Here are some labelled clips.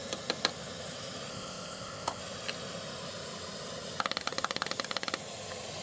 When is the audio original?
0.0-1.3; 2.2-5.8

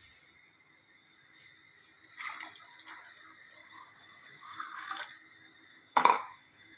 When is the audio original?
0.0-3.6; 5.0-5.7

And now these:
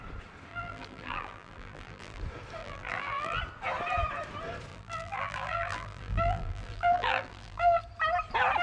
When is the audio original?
0.0-0.5; 2.2-2.6; 3.4-4.7; 7.8-8.6

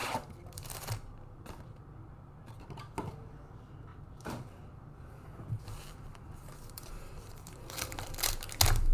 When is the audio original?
2.8-3.9; 8.3-8.9

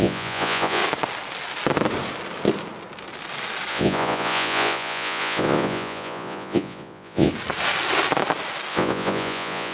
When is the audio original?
0.8-3.7; 7.3-8.7

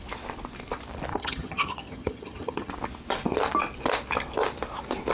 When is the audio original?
0.0-1.1; 2.7-5.1

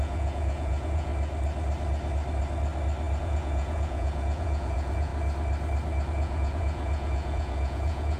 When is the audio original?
1.1-3.2; 5.1-6.1